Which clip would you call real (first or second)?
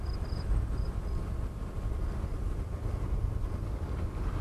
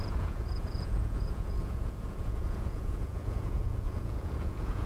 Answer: first